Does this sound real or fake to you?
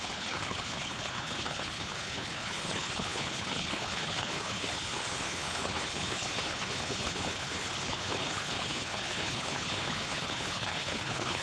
fake